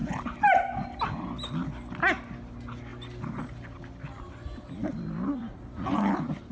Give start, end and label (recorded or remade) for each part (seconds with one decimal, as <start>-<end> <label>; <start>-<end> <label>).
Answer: 0.0-6.5 recorded